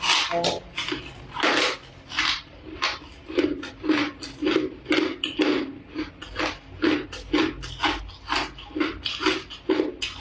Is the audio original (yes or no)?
yes